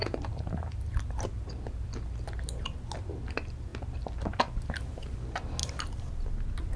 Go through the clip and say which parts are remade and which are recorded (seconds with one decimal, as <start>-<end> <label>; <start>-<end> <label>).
0.0-1.1 remade; 1.1-5.6 recorded; 5.6-6.1 remade; 6.1-6.8 recorded